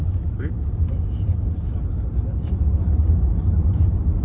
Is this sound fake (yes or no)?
yes